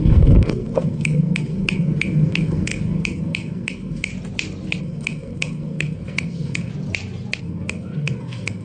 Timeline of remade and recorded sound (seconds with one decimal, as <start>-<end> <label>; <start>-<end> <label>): 0.0-4.1 remade; 4.1-4.8 recorded; 4.8-6.7 remade; 6.7-7.4 recorded; 7.4-8.6 remade